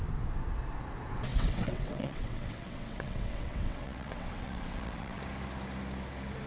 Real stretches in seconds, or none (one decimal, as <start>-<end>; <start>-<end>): 0.0-1.3; 5.2-6.5